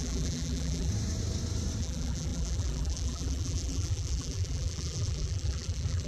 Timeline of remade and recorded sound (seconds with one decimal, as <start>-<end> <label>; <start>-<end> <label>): 0.0-0.9 remade; 0.9-1.8 recorded; 1.8-6.1 remade